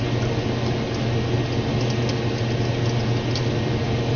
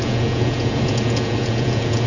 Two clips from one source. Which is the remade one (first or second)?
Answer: second